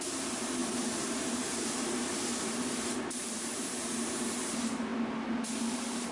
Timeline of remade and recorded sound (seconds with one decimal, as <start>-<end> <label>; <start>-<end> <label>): 0.0-4.9 remade; 4.9-5.6 recorded; 5.6-6.1 remade